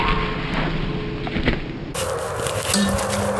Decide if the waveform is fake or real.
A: real